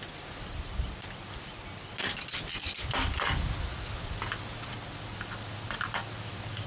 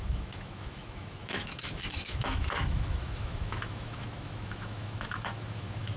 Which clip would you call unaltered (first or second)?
first